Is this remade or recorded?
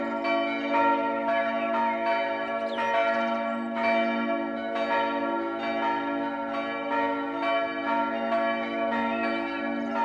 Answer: recorded